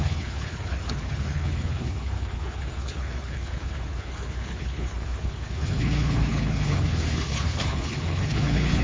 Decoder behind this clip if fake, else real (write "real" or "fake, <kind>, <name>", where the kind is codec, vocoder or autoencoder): fake, codec, HILCodec